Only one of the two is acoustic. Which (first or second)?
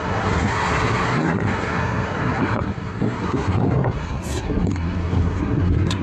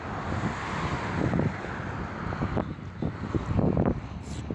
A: second